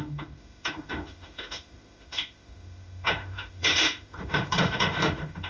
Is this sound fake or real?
fake